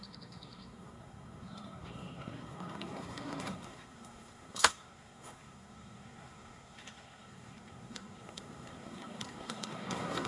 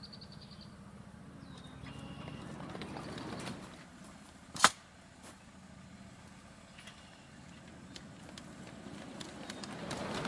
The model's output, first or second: first